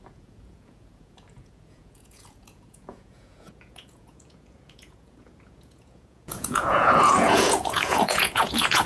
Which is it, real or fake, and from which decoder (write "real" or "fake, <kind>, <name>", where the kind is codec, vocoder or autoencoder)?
fake, vocoder, Vocos